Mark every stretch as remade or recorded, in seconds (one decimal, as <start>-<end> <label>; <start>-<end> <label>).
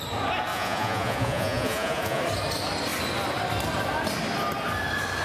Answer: 0.0-0.5 recorded; 0.5-2.2 remade; 2.2-5.2 recorded